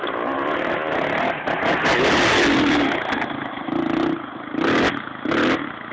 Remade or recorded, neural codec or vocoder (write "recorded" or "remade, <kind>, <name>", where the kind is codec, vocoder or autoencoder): recorded